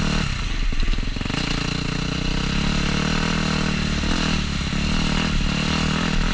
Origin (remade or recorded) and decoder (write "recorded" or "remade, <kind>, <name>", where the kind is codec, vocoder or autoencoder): recorded